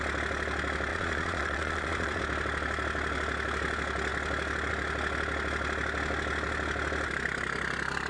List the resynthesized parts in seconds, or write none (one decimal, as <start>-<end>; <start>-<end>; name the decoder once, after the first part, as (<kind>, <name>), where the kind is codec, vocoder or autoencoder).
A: 0.9-2.2 (vocoder, Vocos)